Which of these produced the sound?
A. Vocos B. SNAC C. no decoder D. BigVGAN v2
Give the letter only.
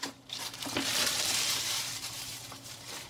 D